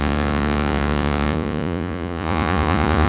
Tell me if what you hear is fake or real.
fake